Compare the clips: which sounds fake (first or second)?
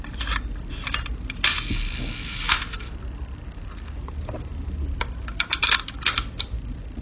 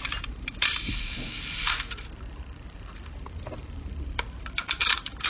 second